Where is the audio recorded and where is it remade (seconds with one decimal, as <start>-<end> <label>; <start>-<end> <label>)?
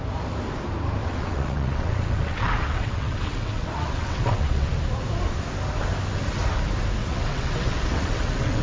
0.0-1.0 recorded; 1.0-4.7 remade; 4.7-7.0 recorded; 7.0-8.6 remade